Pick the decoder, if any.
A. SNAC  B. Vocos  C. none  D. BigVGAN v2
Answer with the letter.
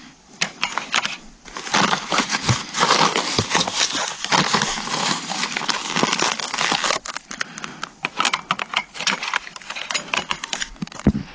C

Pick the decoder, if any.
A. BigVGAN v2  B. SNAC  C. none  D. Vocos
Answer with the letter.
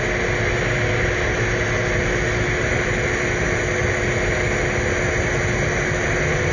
C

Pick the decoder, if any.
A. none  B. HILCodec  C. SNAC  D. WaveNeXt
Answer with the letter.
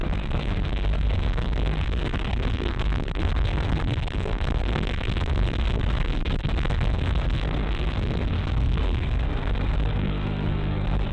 C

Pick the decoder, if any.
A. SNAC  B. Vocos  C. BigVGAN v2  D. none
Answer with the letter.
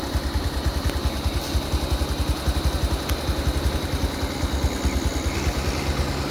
D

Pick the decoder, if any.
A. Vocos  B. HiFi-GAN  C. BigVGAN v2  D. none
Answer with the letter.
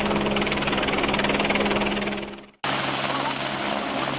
D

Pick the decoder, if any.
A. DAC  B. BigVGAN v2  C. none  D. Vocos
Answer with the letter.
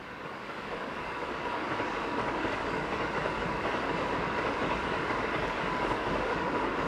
A